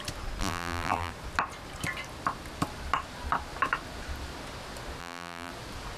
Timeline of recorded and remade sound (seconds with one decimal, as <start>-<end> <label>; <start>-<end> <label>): 0.0-0.4 recorded; 0.4-1.1 remade; 1.1-5.0 recorded; 5.0-5.5 remade; 5.5-6.0 recorded

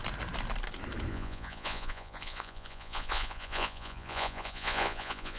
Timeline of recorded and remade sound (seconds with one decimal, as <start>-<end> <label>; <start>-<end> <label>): 0.0-1.1 recorded; 1.1-5.4 remade

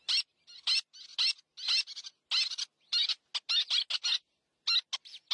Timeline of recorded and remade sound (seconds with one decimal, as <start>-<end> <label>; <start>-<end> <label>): 0.0-5.3 recorded

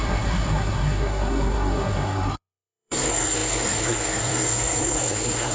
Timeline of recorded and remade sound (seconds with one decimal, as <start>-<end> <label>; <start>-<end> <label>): 0.0-5.5 remade

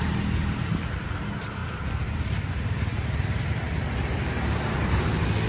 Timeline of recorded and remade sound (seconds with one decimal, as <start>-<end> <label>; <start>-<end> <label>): 0.0-1.6 recorded; 1.6-4.9 remade; 4.9-5.5 recorded

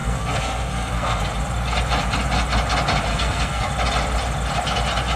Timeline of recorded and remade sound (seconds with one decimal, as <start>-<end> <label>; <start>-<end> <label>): 0.0-1.2 remade; 1.2-3.1 recorded; 3.1-3.7 remade; 3.7-5.2 recorded

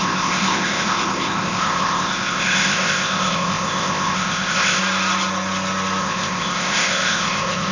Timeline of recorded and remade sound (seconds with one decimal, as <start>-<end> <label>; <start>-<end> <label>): 0.0-4.8 remade; 4.8-6.0 recorded; 6.0-7.7 remade